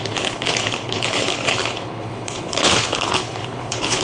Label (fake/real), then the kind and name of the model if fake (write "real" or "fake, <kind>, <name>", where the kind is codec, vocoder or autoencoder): fake, codec, HILCodec